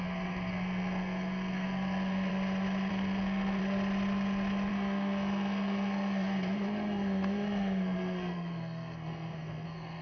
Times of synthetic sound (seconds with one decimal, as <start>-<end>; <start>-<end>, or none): 0.0-2.3; 2.9-3.6; 4.7-10.0